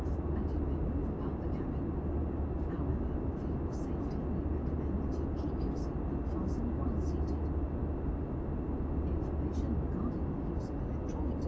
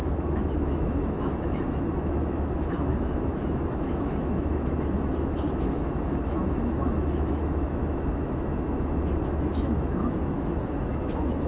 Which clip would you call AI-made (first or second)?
second